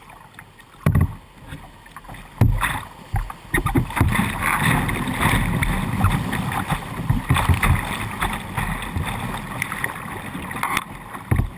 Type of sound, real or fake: real